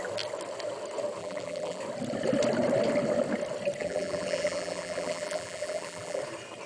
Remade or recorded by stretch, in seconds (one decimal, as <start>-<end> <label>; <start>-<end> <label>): 0.0-1.2 recorded; 1.2-1.8 remade; 1.8-3.8 recorded; 3.8-6.2 remade; 6.2-6.7 recorded